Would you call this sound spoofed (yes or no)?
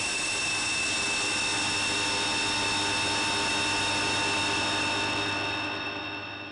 no